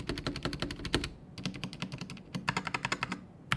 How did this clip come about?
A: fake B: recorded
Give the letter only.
B